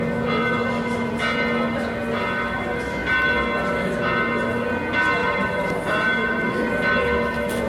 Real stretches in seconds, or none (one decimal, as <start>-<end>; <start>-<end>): 0.0-5.2; 6.7-7.7

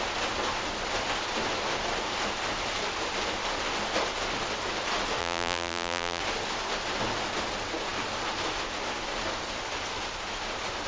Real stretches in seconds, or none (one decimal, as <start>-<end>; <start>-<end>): 0.0-5.2; 6.2-10.9

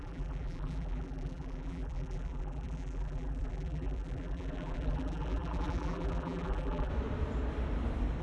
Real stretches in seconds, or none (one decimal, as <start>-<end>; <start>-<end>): 6.9-8.2

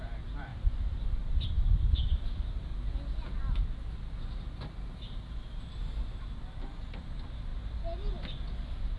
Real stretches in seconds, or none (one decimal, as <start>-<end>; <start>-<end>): 2.7-3.4; 7.5-9.0